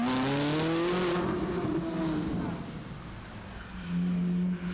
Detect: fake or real real